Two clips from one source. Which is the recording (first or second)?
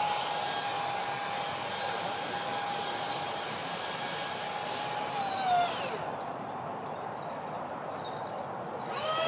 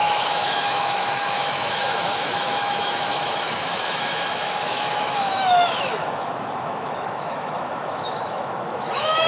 first